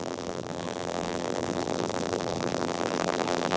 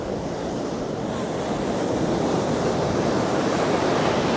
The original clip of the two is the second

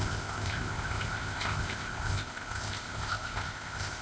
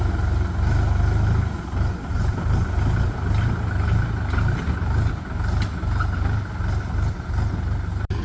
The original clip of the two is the second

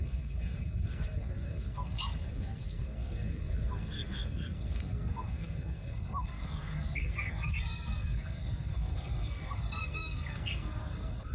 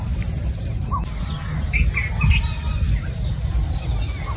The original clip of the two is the second